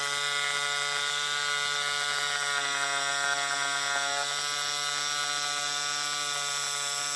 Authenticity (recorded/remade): recorded